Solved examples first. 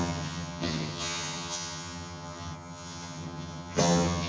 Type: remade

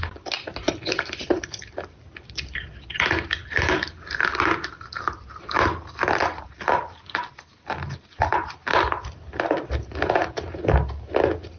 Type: recorded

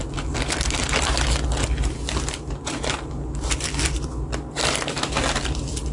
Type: remade